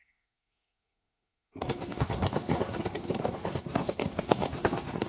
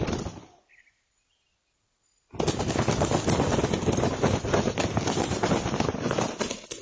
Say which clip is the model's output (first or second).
first